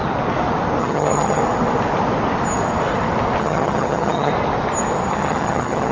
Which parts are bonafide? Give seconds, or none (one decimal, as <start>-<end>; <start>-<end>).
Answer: 0.0-0.8; 1.4-3.4; 4.3-5.1